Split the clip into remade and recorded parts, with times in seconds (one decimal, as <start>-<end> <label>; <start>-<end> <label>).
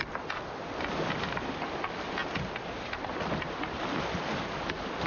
0.0-5.1 recorded